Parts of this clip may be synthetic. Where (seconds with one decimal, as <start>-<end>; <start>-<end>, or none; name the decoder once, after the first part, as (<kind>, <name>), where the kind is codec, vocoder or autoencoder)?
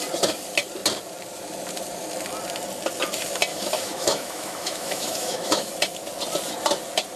3.5-5.7 (autoencoder, DAC-VAE)